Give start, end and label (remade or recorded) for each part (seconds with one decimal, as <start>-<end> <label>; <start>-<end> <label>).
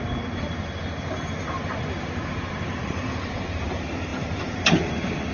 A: 0.0-5.3 recorded